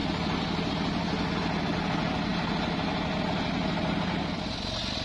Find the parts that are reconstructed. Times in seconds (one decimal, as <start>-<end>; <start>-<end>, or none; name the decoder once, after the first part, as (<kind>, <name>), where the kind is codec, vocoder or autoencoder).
none